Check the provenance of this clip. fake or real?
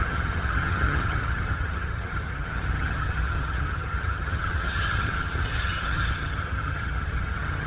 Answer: fake